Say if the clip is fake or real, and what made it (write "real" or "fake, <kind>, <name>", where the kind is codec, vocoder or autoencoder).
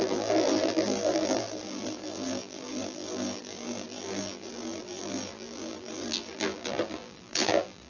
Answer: fake, vocoder, BigVGAN v2